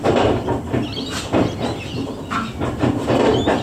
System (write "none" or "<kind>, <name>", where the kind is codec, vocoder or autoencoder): none